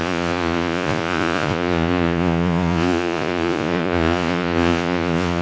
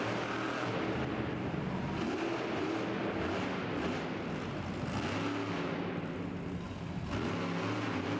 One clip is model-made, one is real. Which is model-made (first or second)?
first